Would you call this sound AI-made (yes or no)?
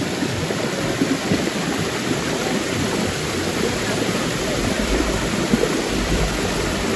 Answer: yes